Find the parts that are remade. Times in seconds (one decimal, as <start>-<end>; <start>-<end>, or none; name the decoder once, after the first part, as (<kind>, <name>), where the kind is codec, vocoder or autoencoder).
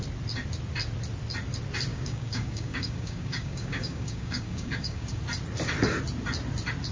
1.9-5.2 (codec, DAC)